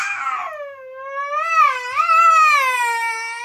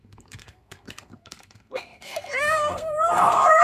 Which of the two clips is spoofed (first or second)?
second